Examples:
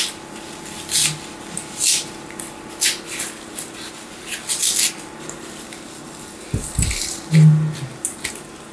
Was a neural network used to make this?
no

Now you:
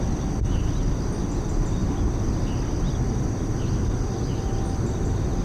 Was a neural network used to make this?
no